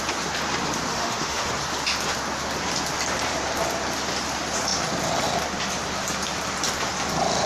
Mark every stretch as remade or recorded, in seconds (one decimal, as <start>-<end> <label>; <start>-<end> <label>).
0.0-0.9 recorded; 0.9-1.5 remade; 1.5-7.5 recorded